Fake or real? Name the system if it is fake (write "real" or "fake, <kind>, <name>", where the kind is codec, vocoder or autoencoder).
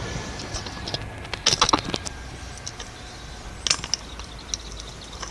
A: real